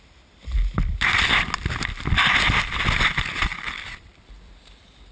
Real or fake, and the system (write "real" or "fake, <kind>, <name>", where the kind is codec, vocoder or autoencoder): real